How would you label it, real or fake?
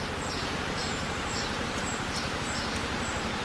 fake